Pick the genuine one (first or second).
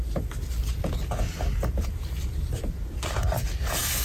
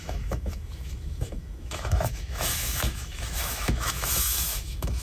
first